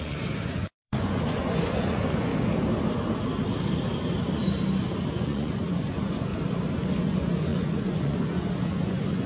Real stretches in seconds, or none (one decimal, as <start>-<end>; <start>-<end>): 2.3-5.1; 6.3-7.0